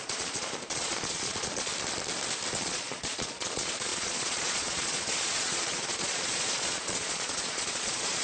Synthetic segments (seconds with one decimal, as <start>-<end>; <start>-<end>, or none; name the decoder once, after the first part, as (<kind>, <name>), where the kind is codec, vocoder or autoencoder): 0.0-1.7 (vocoder, Vocos); 2.5-8.2